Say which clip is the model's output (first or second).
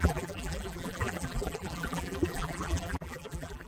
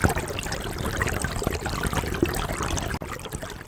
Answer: first